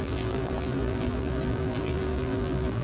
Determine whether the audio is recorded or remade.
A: remade